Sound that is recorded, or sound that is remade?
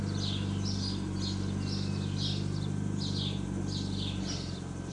recorded